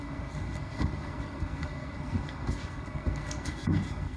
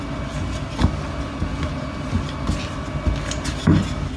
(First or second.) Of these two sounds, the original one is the second